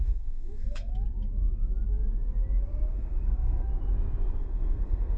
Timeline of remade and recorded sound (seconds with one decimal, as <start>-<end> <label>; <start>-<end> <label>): 0.0-0.9 remade; 0.9-2.9 recorded; 2.9-3.7 remade; 3.7-4.4 recorded; 4.4-5.2 remade

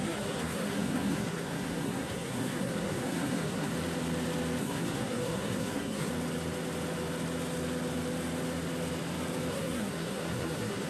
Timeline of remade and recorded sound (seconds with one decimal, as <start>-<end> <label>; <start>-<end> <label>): 0.0-3.7 remade; 3.7-4.6 recorded; 4.6-6.1 remade; 6.1-9.5 recorded; 9.5-10.9 remade

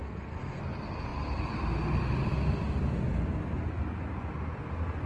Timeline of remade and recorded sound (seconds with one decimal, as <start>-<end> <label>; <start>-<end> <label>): 0.0-0.6 remade; 0.6-5.1 recorded